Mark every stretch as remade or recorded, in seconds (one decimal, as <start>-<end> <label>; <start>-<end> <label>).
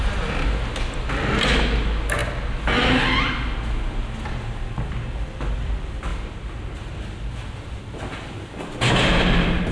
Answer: 0.0-9.7 recorded